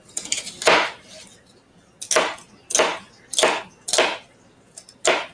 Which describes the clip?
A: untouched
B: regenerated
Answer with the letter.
A